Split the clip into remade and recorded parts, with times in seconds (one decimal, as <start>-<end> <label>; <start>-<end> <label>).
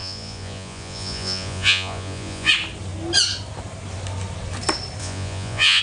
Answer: 0.0-2.5 remade; 2.5-5.0 recorded; 5.0-5.8 remade